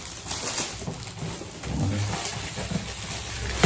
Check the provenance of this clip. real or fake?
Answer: real